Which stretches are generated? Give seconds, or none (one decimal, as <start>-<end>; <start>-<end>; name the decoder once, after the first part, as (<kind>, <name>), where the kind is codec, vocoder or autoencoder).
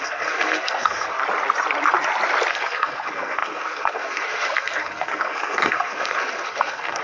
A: 0.0-1.2 (codec, SNAC); 2.5-7.0